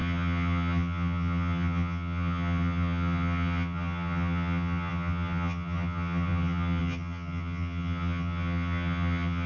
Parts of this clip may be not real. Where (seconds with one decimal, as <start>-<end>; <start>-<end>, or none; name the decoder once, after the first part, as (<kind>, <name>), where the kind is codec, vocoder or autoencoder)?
0.0-9.5 (vocoder, HiFi-GAN)